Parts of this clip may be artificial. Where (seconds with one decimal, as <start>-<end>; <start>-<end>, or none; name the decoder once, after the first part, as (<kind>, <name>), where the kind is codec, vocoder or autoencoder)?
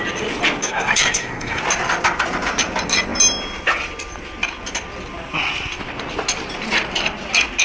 0.6-1.6 (codec, SNAC)